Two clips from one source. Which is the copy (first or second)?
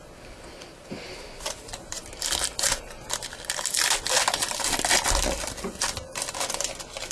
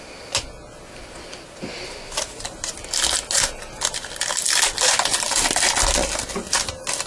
first